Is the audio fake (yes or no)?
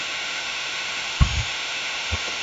yes